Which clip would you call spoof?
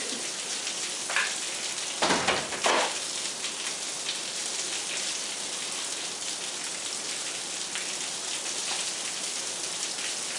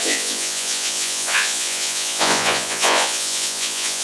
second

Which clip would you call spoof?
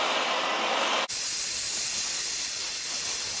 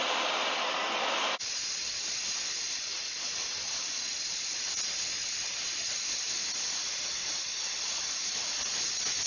second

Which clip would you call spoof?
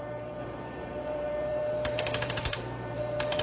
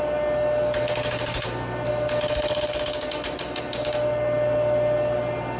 first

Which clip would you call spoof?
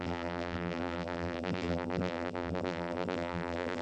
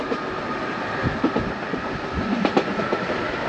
first